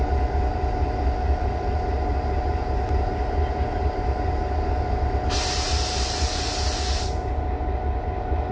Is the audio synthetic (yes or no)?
no